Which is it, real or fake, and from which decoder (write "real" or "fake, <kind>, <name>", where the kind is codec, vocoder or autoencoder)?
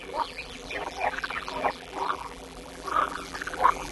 fake, vocoder, BigVGAN v2